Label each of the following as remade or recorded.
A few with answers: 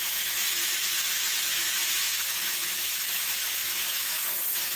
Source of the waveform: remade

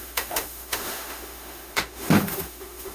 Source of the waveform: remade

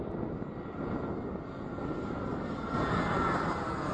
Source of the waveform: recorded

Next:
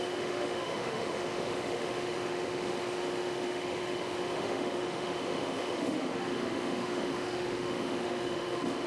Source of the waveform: remade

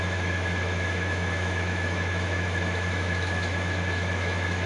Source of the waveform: remade